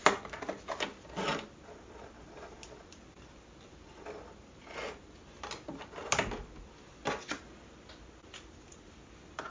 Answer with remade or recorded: recorded